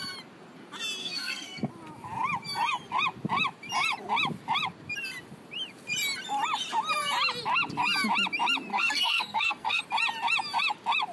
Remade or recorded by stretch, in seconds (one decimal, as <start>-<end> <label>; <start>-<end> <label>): 0.0-1.0 recorded; 1.0-1.7 remade; 1.7-8.7 recorded; 8.7-9.8 remade; 9.8-11.1 recorded